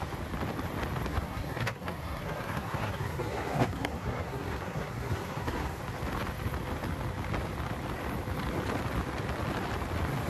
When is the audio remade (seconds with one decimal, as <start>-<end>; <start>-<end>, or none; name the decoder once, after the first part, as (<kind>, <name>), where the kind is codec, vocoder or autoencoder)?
1.1-5.8 (codec, SNAC)